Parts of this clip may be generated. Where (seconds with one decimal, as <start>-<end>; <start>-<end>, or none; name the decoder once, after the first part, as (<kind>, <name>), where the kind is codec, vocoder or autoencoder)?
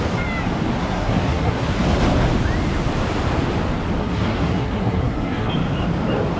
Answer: 0.8-1.8 (codec, SNAC); 4.0-5.5